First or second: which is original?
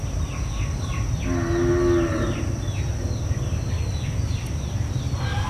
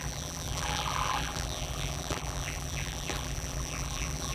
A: first